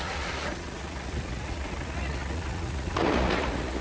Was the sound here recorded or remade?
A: remade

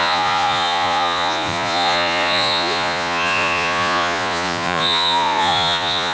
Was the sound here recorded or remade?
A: remade